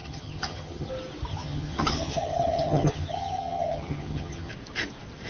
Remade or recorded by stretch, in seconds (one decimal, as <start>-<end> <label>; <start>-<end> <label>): 0.0-0.9 remade; 0.9-1.3 recorded; 1.3-4.5 remade; 4.5-5.3 recorded